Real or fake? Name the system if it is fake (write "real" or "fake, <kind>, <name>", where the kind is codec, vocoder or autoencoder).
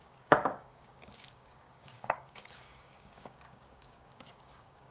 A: fake, codec, DAC